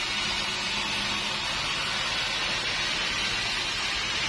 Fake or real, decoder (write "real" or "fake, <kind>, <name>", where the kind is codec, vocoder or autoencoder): real